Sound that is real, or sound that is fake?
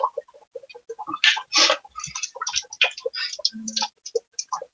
real